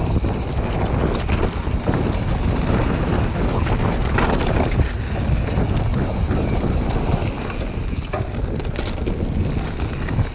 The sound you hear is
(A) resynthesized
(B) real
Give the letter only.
B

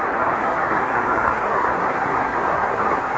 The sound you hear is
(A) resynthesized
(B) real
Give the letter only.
A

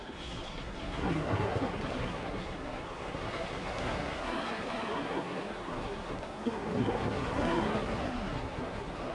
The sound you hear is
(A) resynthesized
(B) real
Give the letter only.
A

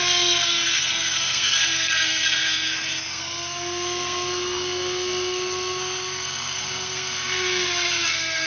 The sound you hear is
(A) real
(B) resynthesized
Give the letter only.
B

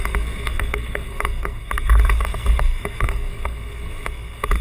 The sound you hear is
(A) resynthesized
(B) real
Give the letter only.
A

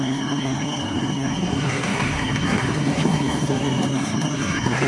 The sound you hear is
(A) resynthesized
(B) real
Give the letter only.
A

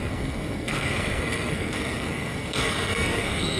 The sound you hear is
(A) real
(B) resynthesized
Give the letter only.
B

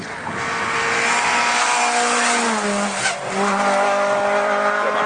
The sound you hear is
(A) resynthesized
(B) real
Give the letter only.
B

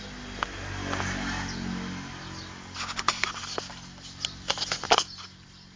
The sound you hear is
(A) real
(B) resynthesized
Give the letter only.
A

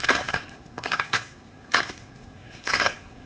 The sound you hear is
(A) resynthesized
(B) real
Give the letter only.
A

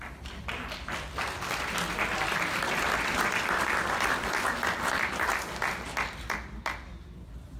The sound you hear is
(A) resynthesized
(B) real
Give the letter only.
B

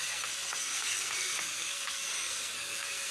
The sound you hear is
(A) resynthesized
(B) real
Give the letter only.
A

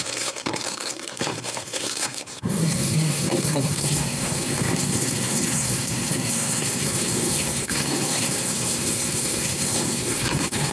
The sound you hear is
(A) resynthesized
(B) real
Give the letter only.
A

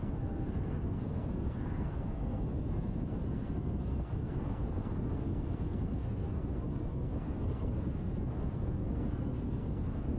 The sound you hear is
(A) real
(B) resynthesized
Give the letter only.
B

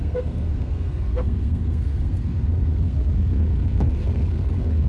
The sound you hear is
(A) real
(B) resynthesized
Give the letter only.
B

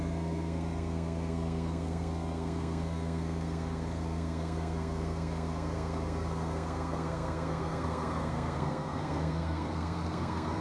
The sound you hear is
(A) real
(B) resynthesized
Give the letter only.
B